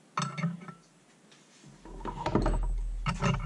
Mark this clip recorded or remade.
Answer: recorded